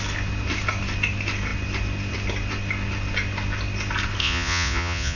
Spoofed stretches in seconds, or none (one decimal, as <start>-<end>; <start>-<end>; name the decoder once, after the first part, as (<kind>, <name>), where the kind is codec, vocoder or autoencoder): 4.2-5.2 (vocoder, Vocos)